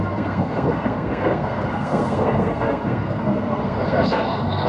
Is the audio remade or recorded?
remade